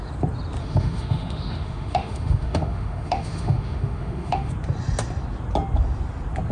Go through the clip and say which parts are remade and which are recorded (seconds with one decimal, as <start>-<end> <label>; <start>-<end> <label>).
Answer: 0.0-0.6 recorded; 0.6-4.5 remade; 4.5-6.5 recorded